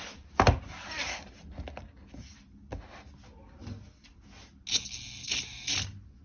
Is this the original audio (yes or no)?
yes